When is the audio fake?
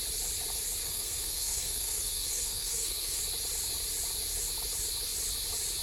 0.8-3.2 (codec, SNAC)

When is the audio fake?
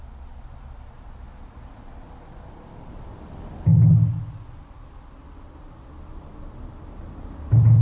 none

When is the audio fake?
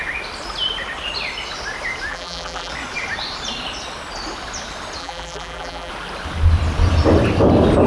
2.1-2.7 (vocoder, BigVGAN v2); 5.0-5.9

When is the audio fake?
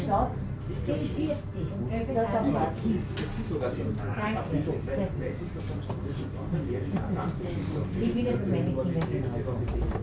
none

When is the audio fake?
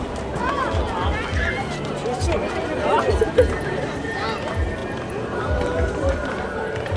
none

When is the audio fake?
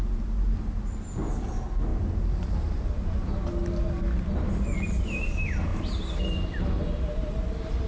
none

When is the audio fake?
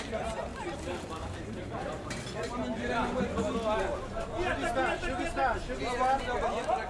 0.5-2.1 (vocoder, BigVGAN v2)